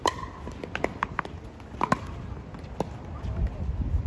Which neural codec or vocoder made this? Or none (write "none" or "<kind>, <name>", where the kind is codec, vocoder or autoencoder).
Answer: none